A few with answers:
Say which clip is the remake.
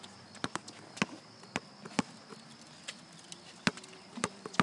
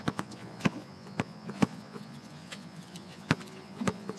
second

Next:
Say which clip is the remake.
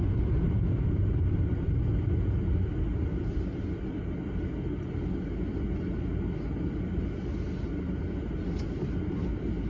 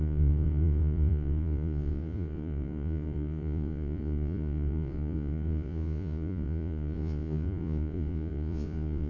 second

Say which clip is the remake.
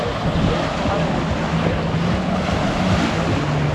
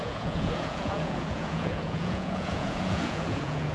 second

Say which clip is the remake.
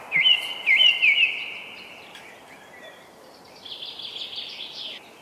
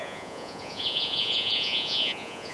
second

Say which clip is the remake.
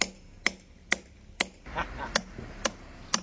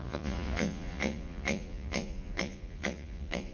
second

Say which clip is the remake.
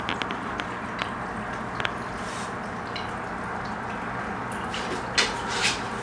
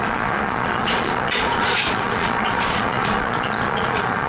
second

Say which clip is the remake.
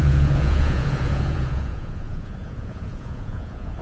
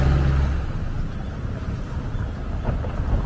first